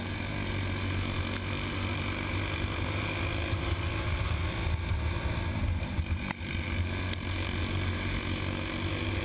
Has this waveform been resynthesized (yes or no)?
no